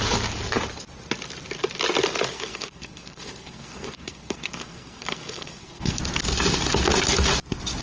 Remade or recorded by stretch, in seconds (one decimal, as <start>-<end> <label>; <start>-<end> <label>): 0.0-2.3 recorded; 2.3-6.0 remade; 6.0-7.8 recorded